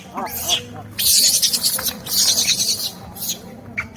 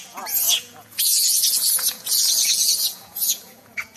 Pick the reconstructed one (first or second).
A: second